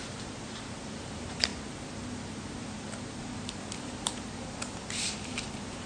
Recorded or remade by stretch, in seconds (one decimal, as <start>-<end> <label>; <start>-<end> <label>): 0.0-1.5 remade; 1.5-3.4 recorded; 3.4-5.9 remade

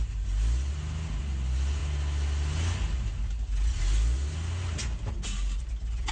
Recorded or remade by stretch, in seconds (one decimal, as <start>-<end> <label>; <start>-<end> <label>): 0.0-6.1 recorded

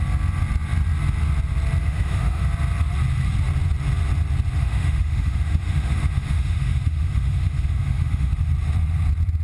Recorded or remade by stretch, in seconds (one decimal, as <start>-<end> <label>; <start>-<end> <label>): 0.0-1.8 recorded; 1.8-2.4 remade; 2.4-4.6 recorded; 4.6-8.3 remade; 8.3-9.4 recorded